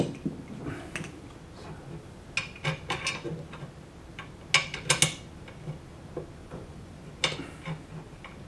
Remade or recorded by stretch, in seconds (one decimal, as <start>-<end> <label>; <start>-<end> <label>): 0.0-6.4 recorded; 6.4-7.1 remade; 7.1-8.5 recorded